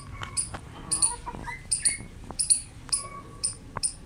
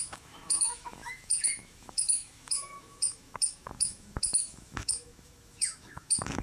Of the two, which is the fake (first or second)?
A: second